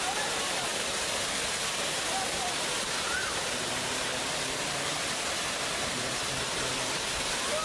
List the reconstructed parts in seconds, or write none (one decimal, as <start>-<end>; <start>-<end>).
none